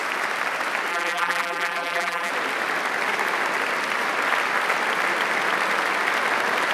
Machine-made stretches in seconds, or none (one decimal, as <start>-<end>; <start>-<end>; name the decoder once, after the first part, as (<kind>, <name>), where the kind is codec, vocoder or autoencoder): 0.9-2.3 (vocoder, BigVGAN v2)